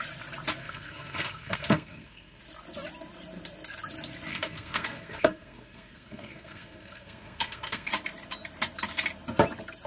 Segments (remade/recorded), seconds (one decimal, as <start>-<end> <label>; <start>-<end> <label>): 0.0-0.6 recorded; 0.6-2.4 remade; 2.4-4.3 recorded; 4.3-7.9 remade; 7.9-9.9 recorded